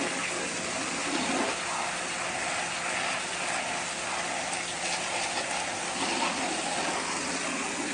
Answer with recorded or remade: recorded